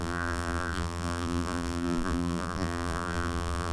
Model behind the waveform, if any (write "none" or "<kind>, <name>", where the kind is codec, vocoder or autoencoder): vocoder, BigVGAN v2